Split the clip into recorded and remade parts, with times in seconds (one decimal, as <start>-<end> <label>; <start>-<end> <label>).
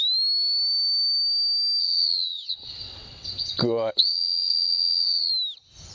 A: 0.0-1.8 recorded; 1.8-5.3 remade; 5.3-5.9 recorded